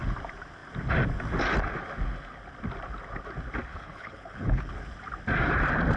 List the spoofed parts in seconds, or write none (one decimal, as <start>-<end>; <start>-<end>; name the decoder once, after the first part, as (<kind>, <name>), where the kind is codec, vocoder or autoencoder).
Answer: 3.7-4.7 (codec, HILCodec)